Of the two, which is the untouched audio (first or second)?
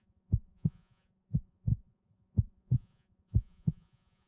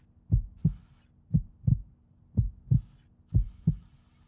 second